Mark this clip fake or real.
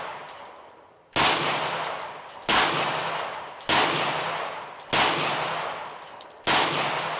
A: real